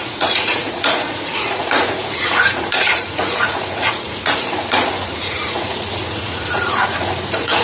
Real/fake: fake